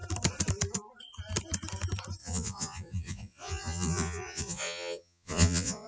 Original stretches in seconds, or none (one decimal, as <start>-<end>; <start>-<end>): 0.0-2.2